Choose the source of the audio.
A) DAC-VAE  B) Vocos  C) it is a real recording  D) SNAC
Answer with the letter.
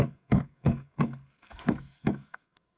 D